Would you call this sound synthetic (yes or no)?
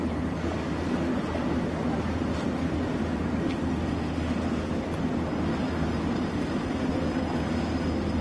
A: no